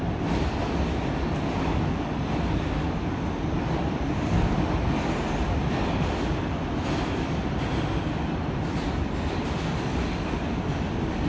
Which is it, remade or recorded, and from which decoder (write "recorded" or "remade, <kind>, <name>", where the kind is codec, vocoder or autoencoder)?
recorded